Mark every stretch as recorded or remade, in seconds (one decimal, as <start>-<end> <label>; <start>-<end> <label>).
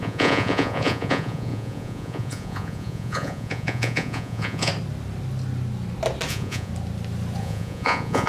0.0-4.7 remade; 4.7-6.3 recorded; 6.3-6.7 remade; 6.7-7.4 recorded; 7.4-8.3 remade